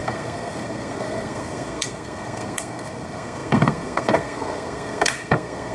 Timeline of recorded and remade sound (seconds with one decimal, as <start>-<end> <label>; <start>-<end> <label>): 0.0-5.7 remade